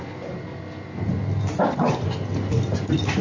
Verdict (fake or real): real